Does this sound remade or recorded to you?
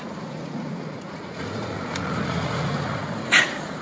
remade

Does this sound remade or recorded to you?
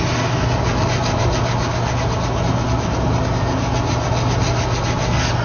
recorded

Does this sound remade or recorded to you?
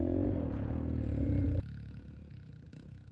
remade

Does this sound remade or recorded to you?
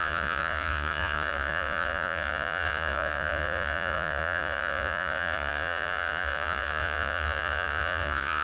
remade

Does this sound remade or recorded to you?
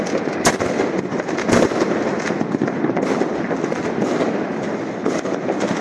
recorded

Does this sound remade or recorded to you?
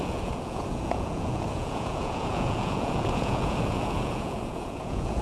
remade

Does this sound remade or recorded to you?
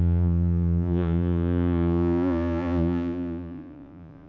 remade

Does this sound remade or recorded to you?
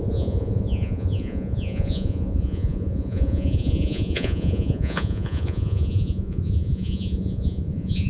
remade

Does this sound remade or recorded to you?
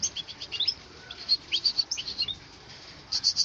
recorded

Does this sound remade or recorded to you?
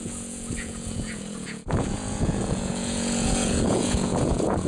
remade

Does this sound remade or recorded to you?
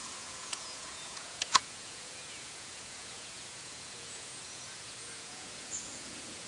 remade